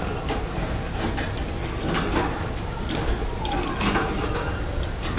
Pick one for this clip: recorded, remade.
recorded